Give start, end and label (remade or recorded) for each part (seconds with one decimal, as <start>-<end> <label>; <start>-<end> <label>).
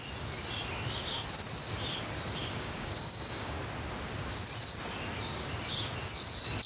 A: 0.0-2.4 recorded; 2.4-3.6 remade; 3.6-6.7 recorded